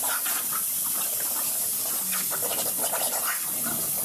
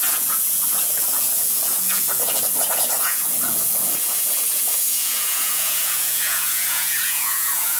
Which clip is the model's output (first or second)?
second